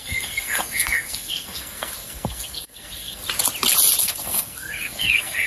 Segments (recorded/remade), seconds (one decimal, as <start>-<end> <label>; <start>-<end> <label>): 0.0-3.2 remade; 3.2-4.0 recorded; 4.0-5.5 remade